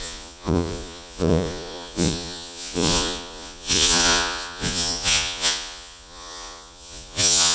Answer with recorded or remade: remade